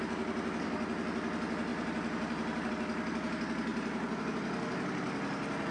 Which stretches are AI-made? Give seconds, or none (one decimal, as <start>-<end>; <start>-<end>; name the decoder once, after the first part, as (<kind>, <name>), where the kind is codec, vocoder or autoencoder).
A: 1.7-2.7 (vocoder, BigVGAN v2); 3.7-4.2